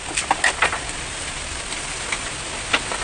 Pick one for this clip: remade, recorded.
recorded